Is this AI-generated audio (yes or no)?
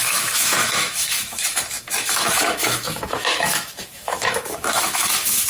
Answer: yes